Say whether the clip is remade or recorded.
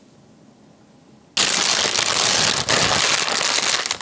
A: recorded